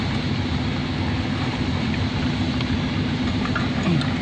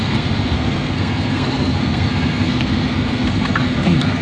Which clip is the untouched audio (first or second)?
first